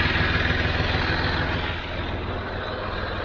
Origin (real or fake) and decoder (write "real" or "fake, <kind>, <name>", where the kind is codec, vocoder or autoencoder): real